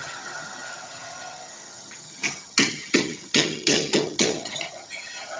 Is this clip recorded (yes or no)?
no